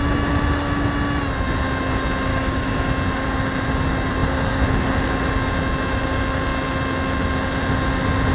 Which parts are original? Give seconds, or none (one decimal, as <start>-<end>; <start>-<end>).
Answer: 0.0-2.3; 2.9-8.3